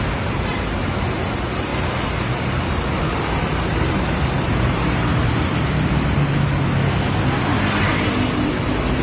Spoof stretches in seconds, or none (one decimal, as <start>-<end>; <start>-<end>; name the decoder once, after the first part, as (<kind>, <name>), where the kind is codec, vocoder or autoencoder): 3.5-5.2 (vocoder, BigVGAN v2)